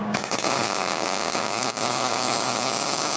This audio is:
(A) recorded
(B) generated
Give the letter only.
B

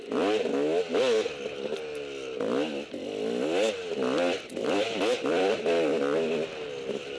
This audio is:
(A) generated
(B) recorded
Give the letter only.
B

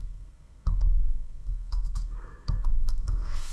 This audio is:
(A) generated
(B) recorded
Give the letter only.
A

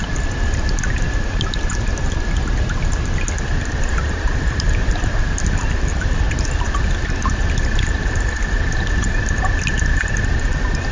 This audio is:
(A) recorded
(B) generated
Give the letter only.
A